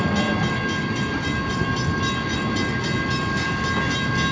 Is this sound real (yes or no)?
yes